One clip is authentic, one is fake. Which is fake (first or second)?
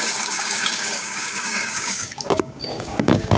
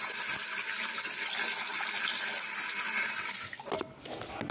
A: first